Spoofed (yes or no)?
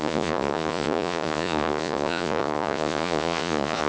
yes